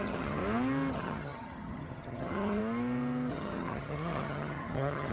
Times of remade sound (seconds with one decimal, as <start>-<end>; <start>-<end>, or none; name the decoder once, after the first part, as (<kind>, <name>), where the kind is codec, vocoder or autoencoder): 0.0-0.4 (vocoder, HiFi-GAN); 0.9-2.6; 3.3-5.1